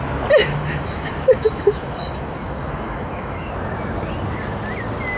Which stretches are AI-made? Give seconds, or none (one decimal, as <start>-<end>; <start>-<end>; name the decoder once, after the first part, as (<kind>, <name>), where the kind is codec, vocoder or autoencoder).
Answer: 0.4-3.5 (autoencoder, DAC-VAE)